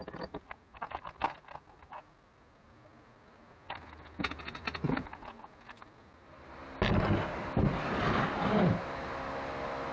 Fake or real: real